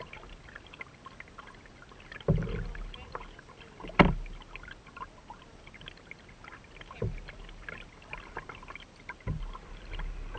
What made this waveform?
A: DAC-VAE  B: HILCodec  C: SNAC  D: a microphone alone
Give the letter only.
D